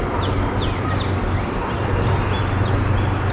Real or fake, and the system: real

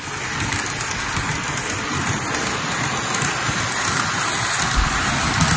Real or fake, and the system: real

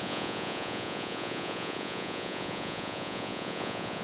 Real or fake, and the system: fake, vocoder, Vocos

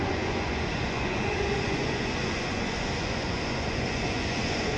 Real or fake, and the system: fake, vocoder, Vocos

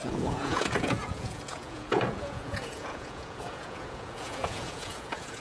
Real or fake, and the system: fake, vocoder, Vocos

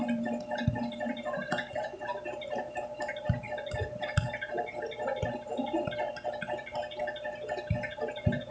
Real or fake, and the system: real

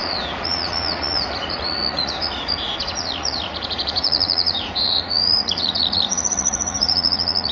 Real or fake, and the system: fake, vocoder, Vocos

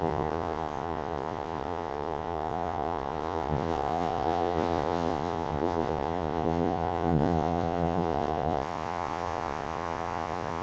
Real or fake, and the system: fake, vocoder, Vocos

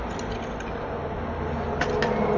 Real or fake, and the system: real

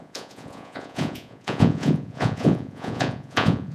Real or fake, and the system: fake, vocoder, Vocos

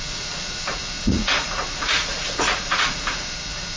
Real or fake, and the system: fake, vocoder, Vocos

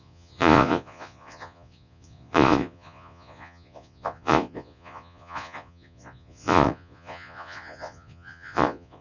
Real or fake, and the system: fake, vocoder, Vocos